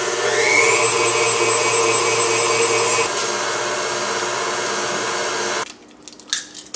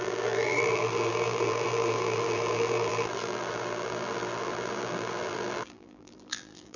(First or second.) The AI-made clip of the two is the second